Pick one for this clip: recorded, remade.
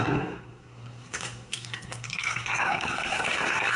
remade